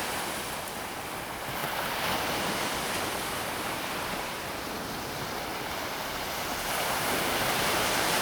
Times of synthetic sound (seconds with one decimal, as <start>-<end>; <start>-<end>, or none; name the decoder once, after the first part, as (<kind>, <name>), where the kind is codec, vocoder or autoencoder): 0.0-5.5 (vocoder, BigVGAN v2); 6.5-8.2